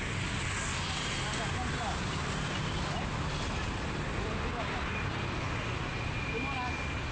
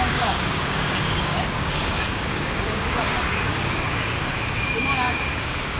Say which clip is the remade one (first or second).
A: second